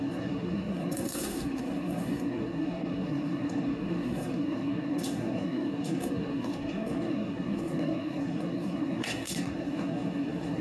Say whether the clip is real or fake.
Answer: fake